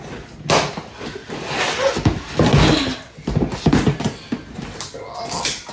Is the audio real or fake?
real